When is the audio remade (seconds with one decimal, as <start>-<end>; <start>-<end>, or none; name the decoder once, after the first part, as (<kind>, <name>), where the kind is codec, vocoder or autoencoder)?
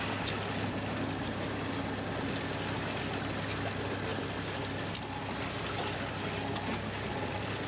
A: none